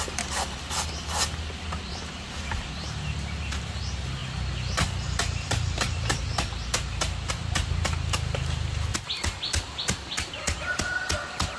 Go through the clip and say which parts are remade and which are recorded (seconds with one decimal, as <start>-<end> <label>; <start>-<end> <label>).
0.0-11.6 recorded